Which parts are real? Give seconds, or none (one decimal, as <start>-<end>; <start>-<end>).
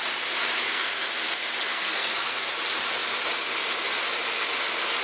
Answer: 0.0-0.6; 1.1-1.7; 2.5-5.0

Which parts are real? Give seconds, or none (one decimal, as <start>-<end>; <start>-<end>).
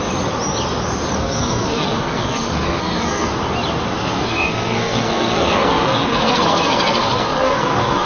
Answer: 0.0-1.2; 3.3-4.0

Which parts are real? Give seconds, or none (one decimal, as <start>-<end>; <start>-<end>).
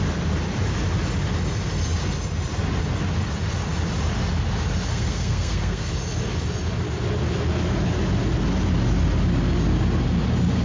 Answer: 0.0-4.9; 5.9-10.6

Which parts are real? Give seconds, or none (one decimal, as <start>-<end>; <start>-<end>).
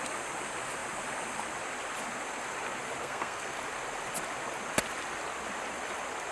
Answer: 0.0-3.0; 3.6-6.3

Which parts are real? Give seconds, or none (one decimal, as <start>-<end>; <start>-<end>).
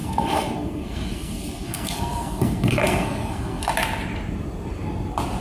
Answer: 3.7-5.4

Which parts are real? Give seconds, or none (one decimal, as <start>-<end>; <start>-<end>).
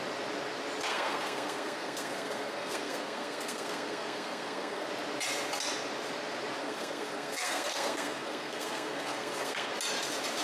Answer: 0.0-0.9; 4.9-6.6; 9.7-10.4